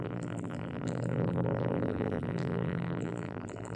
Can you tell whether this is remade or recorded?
remade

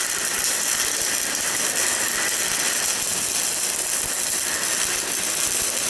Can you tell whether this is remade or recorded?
recorded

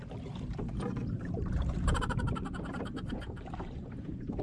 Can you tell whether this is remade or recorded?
remade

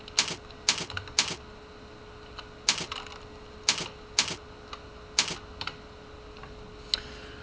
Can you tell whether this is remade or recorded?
recorded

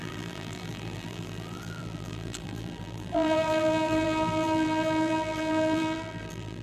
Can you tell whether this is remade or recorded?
remade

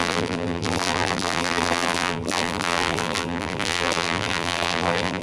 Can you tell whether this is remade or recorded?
remade